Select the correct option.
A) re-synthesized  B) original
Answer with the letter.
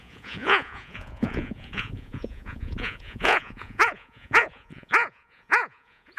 A